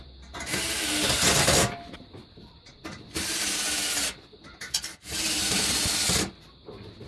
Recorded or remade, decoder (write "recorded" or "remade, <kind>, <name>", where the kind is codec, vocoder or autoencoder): recorded